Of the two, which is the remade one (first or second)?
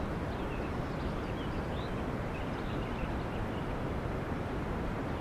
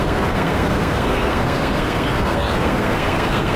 second